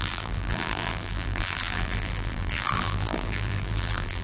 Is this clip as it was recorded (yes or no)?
no